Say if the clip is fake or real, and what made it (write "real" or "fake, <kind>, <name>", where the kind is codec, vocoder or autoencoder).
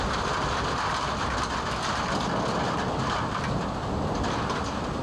real